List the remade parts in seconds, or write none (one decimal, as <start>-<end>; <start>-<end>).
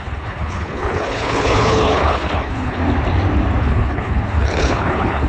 0.0-2.8; 3.6-5.3